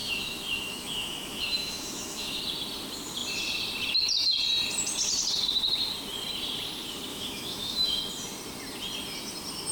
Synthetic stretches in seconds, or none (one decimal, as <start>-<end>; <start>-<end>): 0.0-2.4; 7.1-8.0